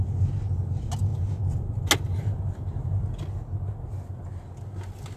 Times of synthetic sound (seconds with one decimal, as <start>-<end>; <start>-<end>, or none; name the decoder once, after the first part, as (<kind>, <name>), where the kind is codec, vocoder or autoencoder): none